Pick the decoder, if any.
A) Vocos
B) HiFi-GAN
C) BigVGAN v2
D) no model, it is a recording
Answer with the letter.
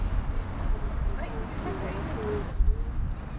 D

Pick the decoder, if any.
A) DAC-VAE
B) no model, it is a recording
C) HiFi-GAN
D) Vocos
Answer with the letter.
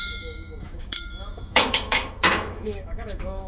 A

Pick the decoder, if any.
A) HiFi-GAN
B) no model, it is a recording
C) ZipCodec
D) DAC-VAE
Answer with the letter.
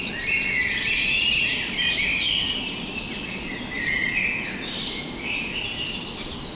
B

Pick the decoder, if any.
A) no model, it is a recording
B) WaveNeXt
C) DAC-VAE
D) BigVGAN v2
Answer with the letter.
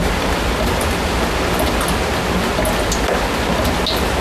A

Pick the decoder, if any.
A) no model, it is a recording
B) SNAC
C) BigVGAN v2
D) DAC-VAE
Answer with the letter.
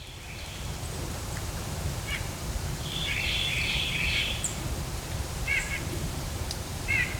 C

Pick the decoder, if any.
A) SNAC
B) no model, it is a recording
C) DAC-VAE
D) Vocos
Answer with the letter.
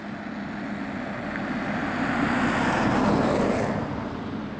B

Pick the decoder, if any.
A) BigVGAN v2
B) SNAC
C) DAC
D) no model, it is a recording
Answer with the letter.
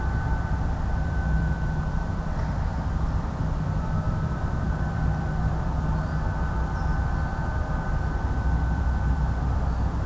A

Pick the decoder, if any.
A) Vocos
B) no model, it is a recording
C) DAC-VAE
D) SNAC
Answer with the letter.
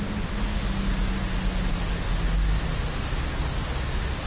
B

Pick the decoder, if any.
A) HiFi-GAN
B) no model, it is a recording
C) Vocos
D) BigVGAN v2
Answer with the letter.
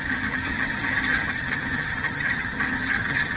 A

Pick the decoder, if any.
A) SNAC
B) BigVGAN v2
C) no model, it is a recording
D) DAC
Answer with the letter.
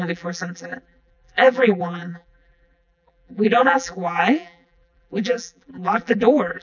B